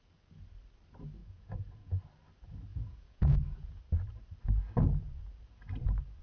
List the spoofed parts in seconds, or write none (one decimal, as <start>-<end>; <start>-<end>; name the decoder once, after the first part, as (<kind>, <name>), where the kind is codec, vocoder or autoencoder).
1.2-2.0 (vocoder, Vocos); 2.7-3.8